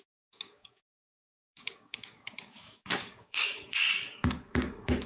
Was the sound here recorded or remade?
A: remade